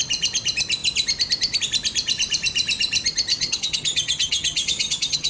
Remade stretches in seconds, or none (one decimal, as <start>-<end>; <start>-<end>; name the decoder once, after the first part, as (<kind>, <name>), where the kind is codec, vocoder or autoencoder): 3.3-5.3 (vocoder, HiFi-GAN)